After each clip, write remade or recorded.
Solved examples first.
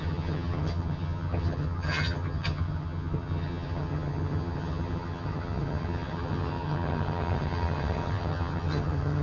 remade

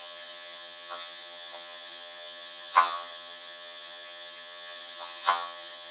remade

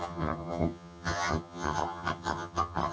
remade